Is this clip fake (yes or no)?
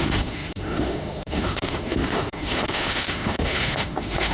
yes